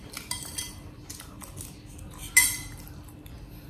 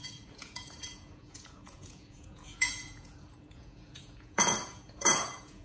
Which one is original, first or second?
first